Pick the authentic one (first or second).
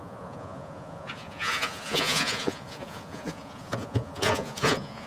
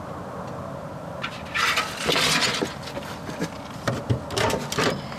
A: second